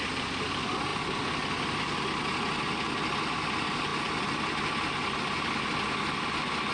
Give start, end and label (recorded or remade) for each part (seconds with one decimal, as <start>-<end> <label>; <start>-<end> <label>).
0.0-6.7 recorded